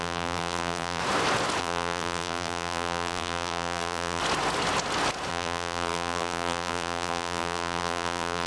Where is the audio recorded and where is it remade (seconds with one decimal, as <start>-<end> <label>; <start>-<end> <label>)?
0.0-1.0 remade; 1.0-1.6 recorded; 1.6-4.2 remade; 4.2-5.3 recorded; 5.3-8.5 remade